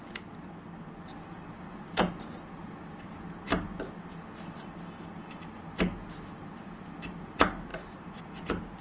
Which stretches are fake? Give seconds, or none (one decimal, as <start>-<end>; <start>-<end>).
none